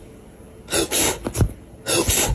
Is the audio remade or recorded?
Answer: recorded